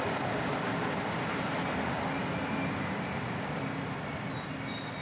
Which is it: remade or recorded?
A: recorded